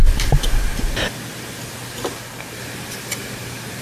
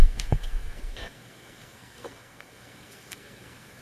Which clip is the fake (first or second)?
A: second